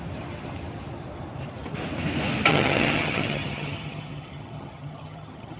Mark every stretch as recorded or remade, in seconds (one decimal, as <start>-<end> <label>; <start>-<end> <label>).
0.0-2.5 recorded; 2.5-5.6 remade